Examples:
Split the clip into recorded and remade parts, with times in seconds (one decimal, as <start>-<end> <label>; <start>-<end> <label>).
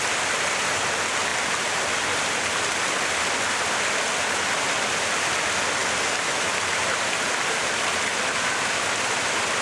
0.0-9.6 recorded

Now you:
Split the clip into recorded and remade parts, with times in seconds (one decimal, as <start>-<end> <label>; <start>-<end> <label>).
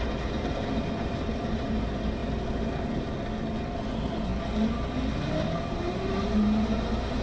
0.0-2.2 remade; 2.2-3.9 recorded; 3.9-4.3 remade; 4.3-5.1 recorded; 5.1-7.2 remade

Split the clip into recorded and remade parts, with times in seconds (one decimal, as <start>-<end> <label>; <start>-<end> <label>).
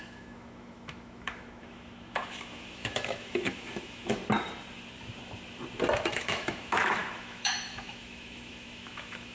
0.0-4.2 remade; 4.2-6.0 recorded; 6.0-9.3 remade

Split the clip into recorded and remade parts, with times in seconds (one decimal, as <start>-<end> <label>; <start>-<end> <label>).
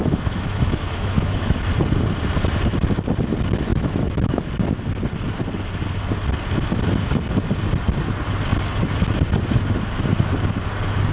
0.0-1.6 remade; 1.6-3.7 recorded; 3.7-4.5 remade; 4.5-11.1 recorded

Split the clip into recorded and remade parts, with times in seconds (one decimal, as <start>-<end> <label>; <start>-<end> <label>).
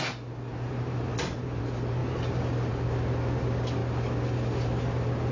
0.0-0.5 recorded; 0.5-1.6 remade; 1.6-2.0 recorded; 2.0-2.7 remade; 2.7-5.3 recorded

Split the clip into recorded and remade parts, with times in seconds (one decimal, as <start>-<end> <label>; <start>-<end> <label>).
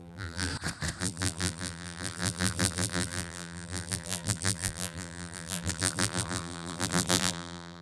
0.0-0.5 remade; 0.5-1.0 recorded; 1.0-7.8 remade